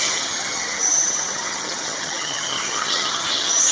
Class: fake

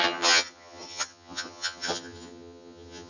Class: fake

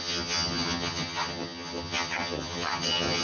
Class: fake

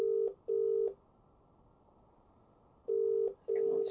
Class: real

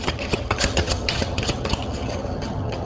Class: fake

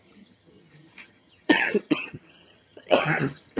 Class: fake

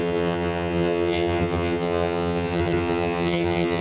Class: fake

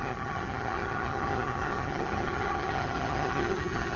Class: fake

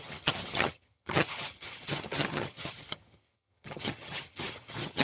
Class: fake